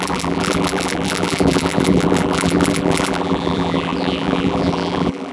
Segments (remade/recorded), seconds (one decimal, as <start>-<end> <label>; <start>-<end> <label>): 0.0-5.3 remade